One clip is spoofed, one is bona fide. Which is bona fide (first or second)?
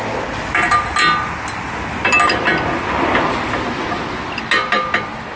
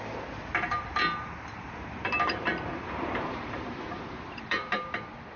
first